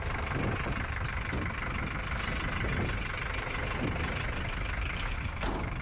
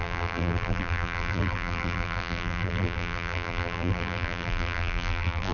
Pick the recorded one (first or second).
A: first